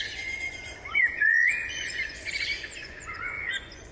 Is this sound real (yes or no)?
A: no